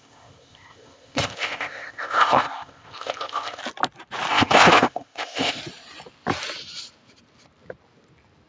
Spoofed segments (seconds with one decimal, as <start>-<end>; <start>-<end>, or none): 0.0-3.6; 4.3-5.6